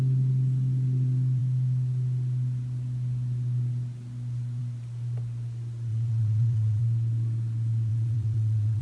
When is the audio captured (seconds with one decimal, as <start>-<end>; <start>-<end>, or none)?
0.0-5.9; 6.8-7.9

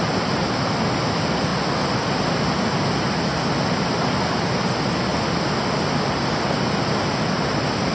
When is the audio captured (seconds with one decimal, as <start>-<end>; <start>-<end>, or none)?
0.0-7.9

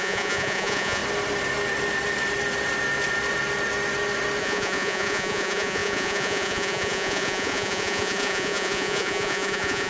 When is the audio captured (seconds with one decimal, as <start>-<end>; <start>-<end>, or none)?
1.0-4.4

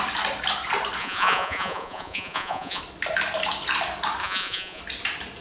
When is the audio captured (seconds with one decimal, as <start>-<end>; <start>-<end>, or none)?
0.0-1.0; 2.8-4.2; 4.8-5.4

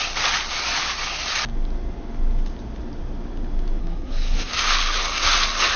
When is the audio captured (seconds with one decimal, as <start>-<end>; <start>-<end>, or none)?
0.0-3.8; 4.5-5.8

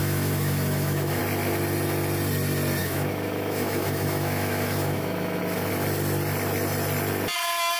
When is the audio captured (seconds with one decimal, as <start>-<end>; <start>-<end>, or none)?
1.2-2.8; 5.4-7.8

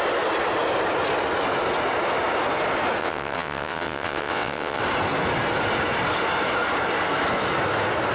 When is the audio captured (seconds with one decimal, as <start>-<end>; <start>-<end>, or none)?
0.0-3.0; 4.8-8.1

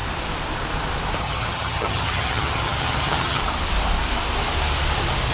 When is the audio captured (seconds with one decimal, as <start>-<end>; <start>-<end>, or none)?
0.0-1.2; 3.4-5.3